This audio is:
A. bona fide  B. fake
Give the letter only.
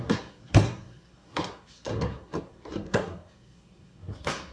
B